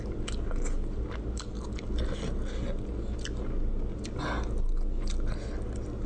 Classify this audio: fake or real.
real